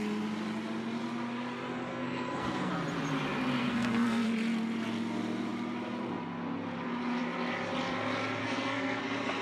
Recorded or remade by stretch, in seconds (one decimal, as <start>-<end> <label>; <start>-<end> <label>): 0.0-1.9 recorded; 1.9-2.7 remade; 2.7-3.6 recorded; 3.6-4.3 remade; 4.3-8.4 recorded; 8.4-9.0 remade; 9.0-9.4 recorded